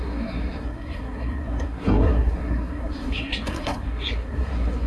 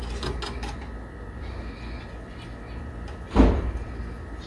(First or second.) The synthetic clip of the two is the first